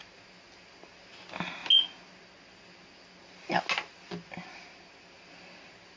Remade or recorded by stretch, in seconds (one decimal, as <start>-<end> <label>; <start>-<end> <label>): 0.0-6.0 recorded